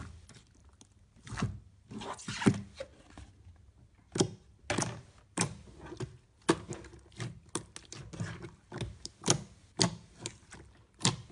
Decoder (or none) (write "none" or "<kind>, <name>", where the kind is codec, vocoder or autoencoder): none